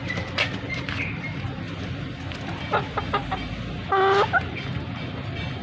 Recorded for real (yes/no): yes